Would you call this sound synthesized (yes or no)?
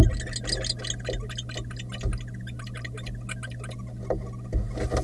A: no